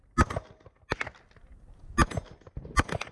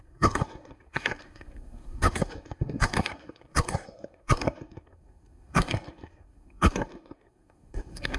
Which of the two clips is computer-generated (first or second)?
second